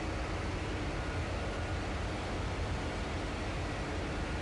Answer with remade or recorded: recorded